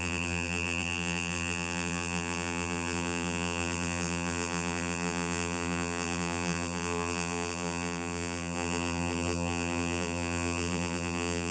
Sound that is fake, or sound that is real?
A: fake